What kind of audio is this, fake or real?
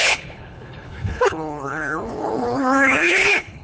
fake